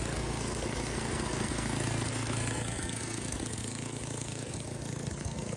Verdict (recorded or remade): remade